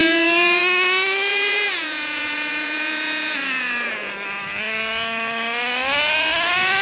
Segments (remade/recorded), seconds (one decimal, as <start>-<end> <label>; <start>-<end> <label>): 0.0-0.6 remade; 0.6-1.3 recorded; 1.3-4.1 remade; 4.1-6.8 recorded